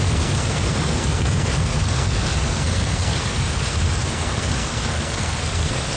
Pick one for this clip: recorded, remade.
remade